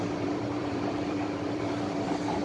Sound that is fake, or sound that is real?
fake